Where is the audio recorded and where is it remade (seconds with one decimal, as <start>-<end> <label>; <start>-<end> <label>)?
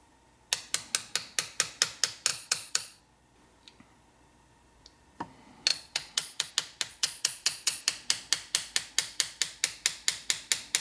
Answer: 0.0-2.3 recorded; 2.3-3.0 remade; 3.0-5.7 recorded; 5.7-6.5 remade; 6.5-6.9 recorded; 6.9-7.8 remade; 7.8-10.8 recorded